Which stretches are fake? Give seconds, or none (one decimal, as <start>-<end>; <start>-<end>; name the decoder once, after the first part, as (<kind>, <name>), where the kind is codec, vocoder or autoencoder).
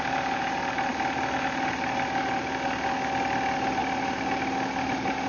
none